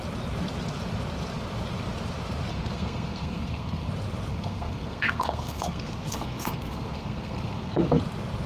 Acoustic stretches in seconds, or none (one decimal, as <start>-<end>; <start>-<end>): 0.0-2.5; 3.9-4.3; 8.0-8.5